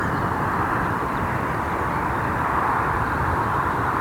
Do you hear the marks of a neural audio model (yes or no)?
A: yes